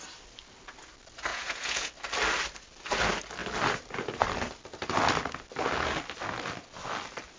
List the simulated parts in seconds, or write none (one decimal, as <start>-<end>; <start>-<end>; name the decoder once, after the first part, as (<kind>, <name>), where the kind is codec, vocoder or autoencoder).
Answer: 1.3-1.9 (vocoder, Vocos)

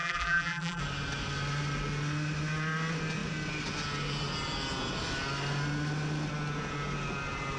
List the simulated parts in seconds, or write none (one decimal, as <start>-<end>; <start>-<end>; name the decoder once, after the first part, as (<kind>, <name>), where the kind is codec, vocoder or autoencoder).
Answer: 0.0-0.8 (vocoder, BigVGAN v2)

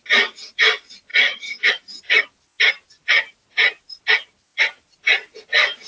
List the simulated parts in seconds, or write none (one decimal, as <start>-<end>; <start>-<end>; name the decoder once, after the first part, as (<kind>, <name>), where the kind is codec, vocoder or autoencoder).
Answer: 1.1-1.7 (vocoder, HiFi-GAN)